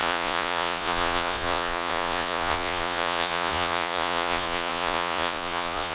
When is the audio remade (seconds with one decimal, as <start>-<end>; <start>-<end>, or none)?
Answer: 0.0-5.9

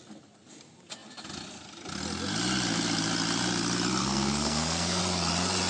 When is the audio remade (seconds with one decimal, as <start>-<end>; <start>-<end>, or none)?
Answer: 4.0-5.0

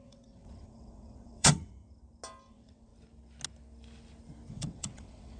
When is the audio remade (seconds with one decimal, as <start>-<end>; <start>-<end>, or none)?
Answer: 0.0-1.8; 2.5-2.9; 4.5-5.4